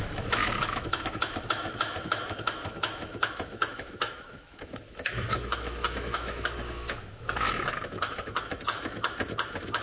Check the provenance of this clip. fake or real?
fake